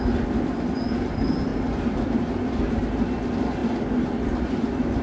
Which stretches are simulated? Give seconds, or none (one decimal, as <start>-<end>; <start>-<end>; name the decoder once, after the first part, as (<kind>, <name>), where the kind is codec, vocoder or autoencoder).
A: 1.5-2.3 (vocoder, BigVGAN v2)